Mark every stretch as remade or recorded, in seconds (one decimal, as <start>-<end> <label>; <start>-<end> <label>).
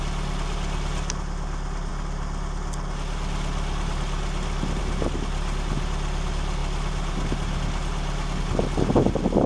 0.0-9.5 recorded